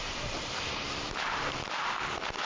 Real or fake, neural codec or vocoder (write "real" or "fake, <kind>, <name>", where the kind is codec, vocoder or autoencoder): fake, vocoder, BigVGAN v2